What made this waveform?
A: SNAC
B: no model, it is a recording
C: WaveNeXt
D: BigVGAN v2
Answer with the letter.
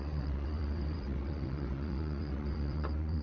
C